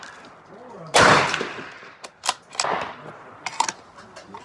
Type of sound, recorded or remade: recorded